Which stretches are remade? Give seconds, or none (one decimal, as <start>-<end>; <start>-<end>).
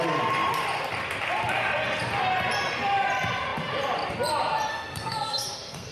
4.7-5.9